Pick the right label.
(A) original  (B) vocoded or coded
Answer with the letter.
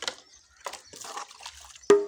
A